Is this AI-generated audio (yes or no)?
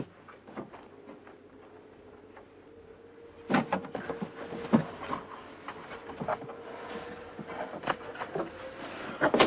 no